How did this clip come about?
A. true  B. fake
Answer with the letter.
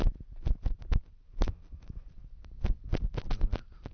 A